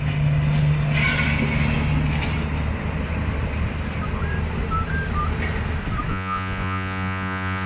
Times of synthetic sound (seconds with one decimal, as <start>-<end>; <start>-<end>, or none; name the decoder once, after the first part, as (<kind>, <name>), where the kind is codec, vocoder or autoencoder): 6.1-7.7 (vocoder, Vocos)